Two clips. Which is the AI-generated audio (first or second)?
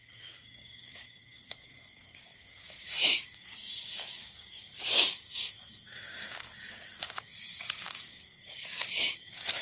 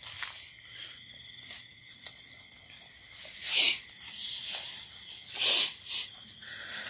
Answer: first